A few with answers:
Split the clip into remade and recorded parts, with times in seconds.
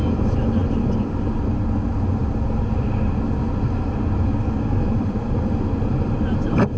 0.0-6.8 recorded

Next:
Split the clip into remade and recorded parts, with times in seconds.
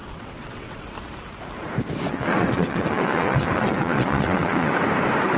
0.0-0.9 remade; 0.9-2.1 recorded; 2.1-4.7 remade; 4.7-5.4 recorded